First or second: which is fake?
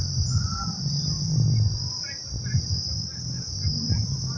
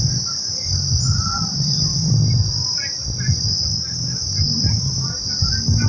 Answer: second